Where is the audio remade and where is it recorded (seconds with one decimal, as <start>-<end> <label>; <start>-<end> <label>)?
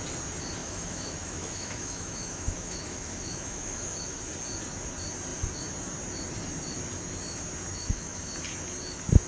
0.0-0.6 recorded; 0.6-4.2 remade; 4.2-7.7 recorded; 7.7-8.3 remade; 8.3-9.3 recorded